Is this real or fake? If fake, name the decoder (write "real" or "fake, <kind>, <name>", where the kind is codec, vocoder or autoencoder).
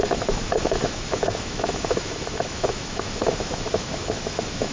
fake, autoencoder, DAC-VAE